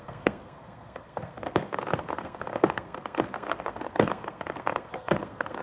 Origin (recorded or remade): remade